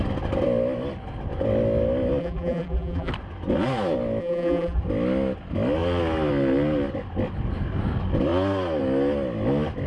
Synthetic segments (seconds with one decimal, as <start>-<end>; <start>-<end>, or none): 2.2-3.1; 4.2-4.8